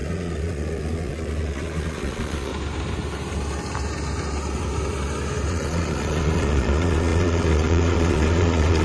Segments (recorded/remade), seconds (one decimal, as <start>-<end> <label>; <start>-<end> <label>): 0.0-2.5 remade; 2.5-5.5 recorded; 5.5-8.8 remade